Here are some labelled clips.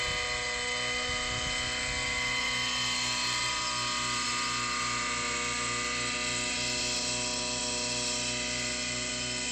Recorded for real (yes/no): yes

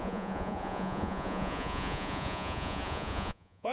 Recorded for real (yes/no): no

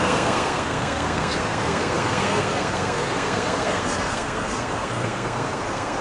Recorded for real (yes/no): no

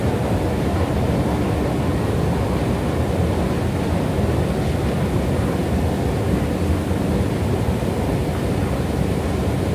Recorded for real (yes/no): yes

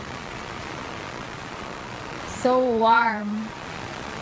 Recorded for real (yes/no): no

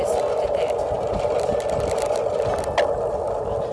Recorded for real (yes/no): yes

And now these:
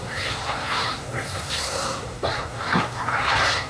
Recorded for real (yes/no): no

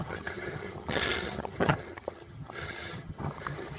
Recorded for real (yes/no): no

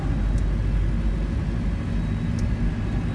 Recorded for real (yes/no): yes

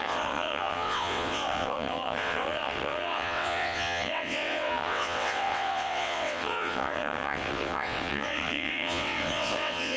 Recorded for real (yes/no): no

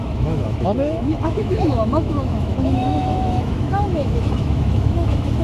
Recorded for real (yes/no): no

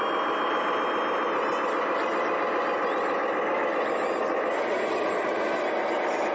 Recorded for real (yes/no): yes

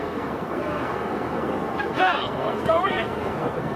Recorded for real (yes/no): no